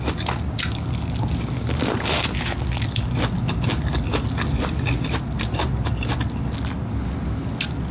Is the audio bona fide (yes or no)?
yes